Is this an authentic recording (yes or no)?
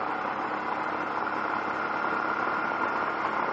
yes